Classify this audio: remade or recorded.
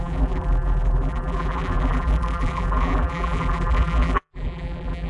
remade